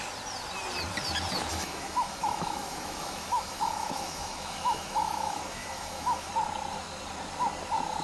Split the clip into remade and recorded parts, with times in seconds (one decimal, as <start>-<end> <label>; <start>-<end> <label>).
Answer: 0.0-1.5 recorded; 1.5-6.3 remade; 6.3-8.0 recorded